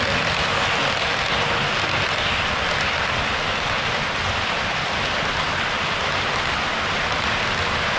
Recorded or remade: recorded